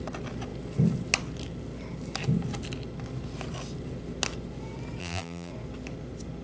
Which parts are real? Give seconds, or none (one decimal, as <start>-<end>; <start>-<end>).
0.0-5.0; 5.5-6.4